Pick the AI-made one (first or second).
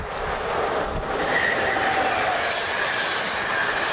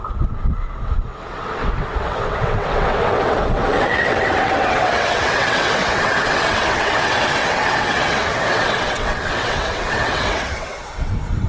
second